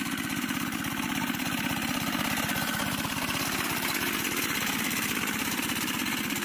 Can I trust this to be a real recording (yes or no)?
yes